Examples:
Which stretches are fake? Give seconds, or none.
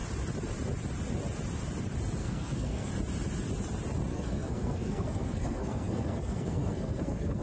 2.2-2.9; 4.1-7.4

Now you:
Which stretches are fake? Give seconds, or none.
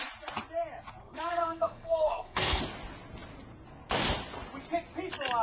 1.0-2.6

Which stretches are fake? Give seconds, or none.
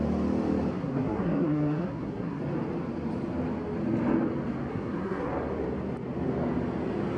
0.8-2.4; 4.7-5.3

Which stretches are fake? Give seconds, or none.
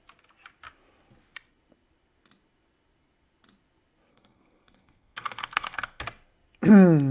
4.1-6.0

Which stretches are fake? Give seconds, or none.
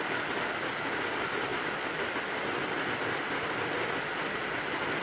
none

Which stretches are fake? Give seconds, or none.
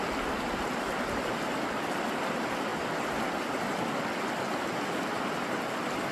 none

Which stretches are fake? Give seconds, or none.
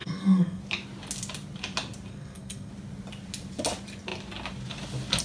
0.0-0.6; 2.1-2.7